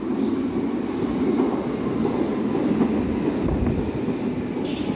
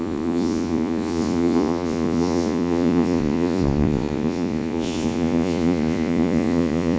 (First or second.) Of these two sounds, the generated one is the second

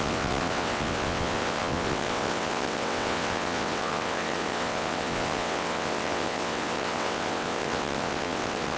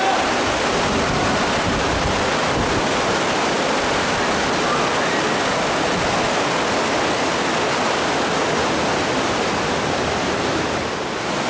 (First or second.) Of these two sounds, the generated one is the first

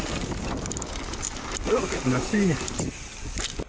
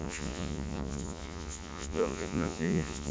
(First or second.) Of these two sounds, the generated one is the second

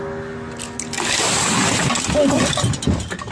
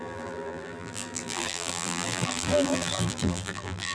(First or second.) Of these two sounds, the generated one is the second